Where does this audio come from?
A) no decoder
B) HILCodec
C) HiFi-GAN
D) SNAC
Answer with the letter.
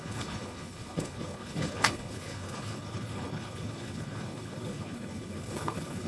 B